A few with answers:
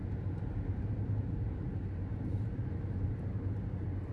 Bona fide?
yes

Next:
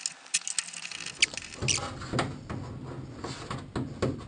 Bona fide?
yes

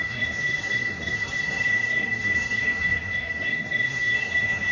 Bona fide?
no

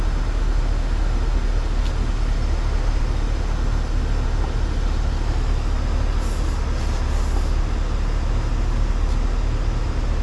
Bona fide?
yes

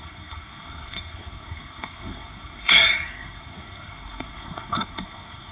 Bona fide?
no